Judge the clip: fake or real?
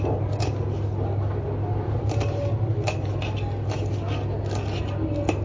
real